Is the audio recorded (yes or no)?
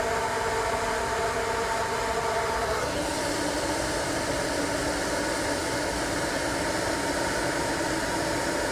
yes